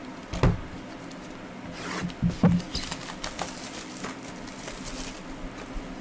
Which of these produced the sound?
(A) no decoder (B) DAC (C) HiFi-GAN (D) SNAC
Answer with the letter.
A